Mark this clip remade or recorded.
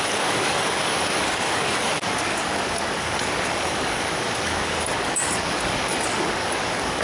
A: remade